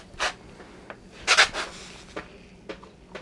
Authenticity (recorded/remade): recorded